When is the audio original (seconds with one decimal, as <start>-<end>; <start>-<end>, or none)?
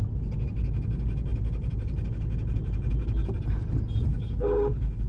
0.0-4.1